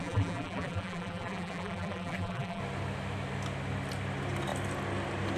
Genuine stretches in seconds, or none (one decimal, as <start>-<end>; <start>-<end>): 2.6-5.4